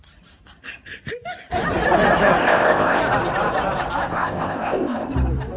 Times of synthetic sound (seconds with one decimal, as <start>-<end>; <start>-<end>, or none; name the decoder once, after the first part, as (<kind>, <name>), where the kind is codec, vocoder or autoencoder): 2.4-3.0 (codec, ZipCodec); 4.1-5.1